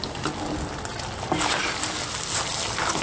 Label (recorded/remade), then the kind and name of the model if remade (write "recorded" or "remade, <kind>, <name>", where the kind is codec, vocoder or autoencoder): recorded